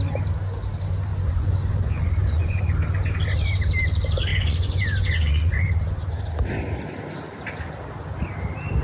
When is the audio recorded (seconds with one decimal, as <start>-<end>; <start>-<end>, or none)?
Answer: 0.0-1.1; 2.6-4.3; 5.7-8.8